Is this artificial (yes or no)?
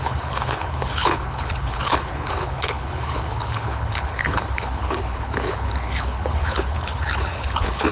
yes